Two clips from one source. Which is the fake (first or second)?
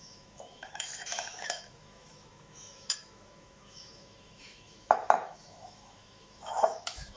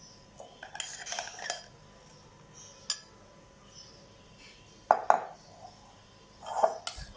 first